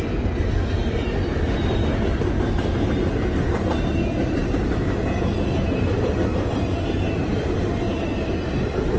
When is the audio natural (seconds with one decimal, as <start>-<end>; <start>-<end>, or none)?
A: 0.0-9.0